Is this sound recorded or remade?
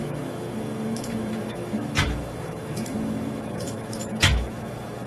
remade